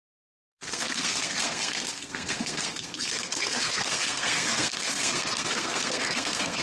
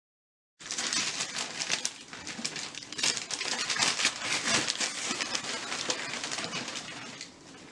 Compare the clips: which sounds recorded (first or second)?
second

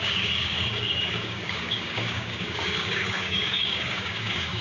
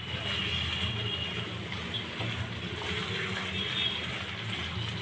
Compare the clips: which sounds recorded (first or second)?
second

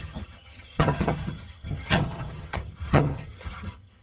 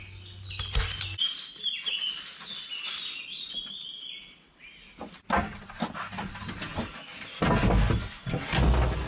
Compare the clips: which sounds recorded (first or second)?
second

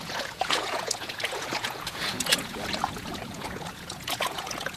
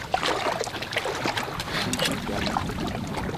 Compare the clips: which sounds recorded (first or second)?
second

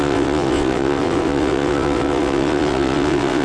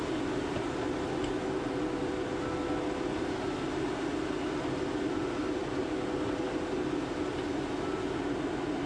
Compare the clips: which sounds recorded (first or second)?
second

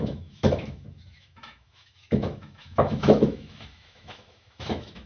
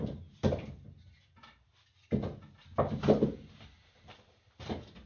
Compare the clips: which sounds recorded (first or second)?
second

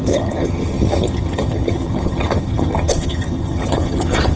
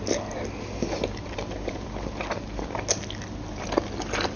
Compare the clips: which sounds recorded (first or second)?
second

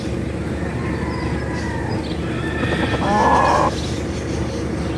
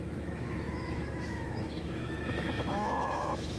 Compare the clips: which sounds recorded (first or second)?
first